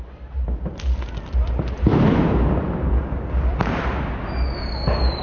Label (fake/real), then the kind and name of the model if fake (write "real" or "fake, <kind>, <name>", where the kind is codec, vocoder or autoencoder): real